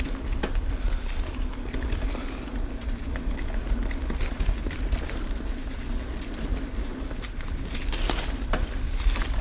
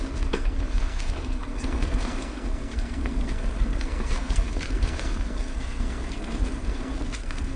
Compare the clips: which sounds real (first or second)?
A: first